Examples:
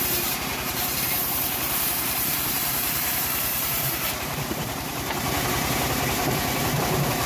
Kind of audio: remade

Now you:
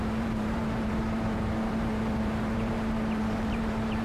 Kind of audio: remade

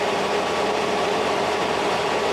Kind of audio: remade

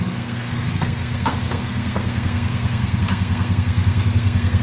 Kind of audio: remade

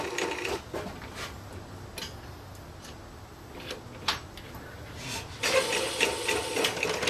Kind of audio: recorded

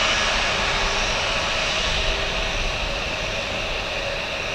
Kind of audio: recorded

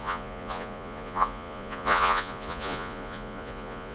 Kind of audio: remade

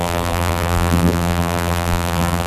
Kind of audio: remade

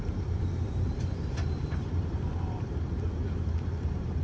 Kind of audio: remade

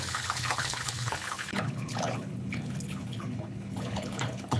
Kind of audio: remade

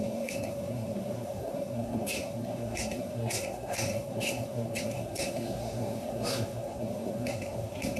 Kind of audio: remade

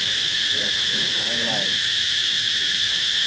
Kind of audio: remade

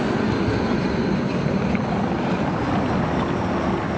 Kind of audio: recorded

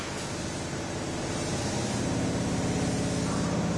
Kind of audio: recorded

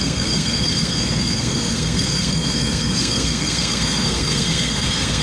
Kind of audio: remade